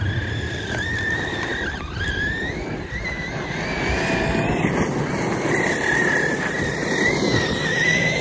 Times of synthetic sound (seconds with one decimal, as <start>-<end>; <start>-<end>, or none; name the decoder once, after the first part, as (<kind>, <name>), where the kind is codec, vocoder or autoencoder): none